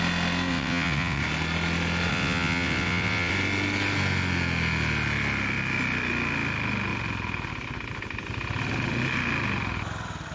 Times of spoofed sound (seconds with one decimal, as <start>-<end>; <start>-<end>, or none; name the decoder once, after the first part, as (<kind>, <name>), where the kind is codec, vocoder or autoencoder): 0.5-1.2 (vocoder, WaveNeXt); 2.1-3.3